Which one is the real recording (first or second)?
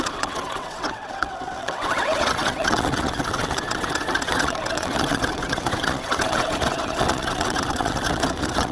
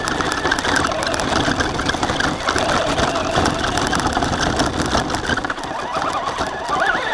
second